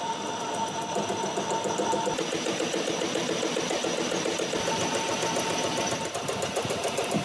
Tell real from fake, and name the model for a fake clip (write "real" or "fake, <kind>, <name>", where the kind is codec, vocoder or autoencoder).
real